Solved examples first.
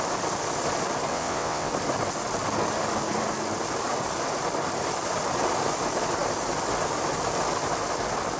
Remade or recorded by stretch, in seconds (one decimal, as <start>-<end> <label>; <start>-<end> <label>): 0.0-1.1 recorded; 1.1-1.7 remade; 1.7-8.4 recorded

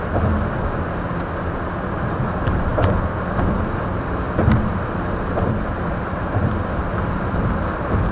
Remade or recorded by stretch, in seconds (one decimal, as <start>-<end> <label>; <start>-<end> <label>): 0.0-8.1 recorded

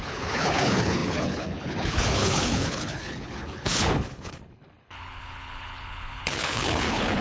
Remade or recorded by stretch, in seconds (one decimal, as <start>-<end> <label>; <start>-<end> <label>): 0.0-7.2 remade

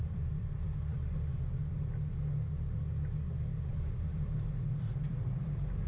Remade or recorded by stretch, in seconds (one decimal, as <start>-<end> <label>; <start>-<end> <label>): 0.0-0.9 remade; 0.9-3.7 recorded; 3.7-5.9 remade

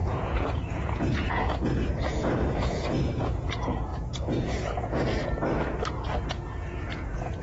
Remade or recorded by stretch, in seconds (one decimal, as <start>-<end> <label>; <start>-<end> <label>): 0.0-5.2 remade; 5.2-6.3 recorded; 6.3-7.4 remade

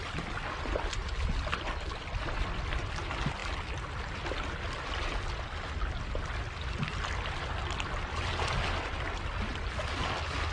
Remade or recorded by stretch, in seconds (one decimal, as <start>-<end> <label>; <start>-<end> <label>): 0.0-10.5 recorded